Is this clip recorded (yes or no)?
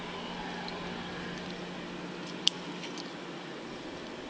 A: yes